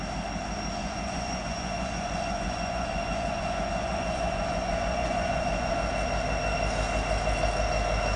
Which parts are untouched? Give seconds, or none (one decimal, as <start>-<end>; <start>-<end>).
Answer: 0.0-0.8; 5.7-8.2